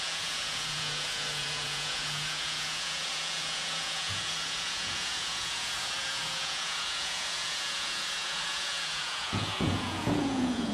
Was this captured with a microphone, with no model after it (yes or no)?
no